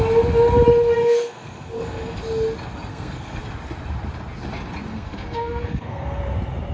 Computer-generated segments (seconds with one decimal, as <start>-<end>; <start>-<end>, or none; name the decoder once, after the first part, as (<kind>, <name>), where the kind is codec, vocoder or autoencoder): 1.0-2.2 (codec, SNAC); 2.9-3.4; 4.9-6.2

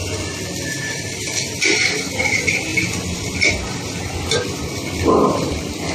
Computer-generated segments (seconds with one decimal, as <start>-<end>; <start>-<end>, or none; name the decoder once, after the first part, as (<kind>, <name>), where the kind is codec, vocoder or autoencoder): none